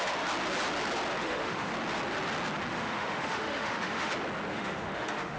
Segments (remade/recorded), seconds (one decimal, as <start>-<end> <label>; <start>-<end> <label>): 0.0-1.2 recorded; 1.2-1.7 remade; 1.7-2.7 recorded; 2.7-4.1 remade; 4.1-4.5 recorded; 4.5-5.4 remade